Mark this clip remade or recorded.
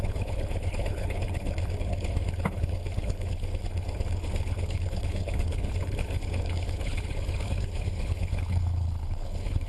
remade